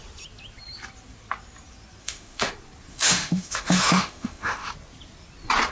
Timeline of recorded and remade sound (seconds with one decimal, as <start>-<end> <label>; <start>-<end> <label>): 0.0-2.0 recorded; 2.0-2.5 remade; 2.5-2.9 recorded; 2.9-4.7 remade; 4.7-5.7 recorded